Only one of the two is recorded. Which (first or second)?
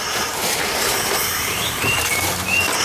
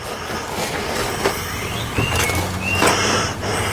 second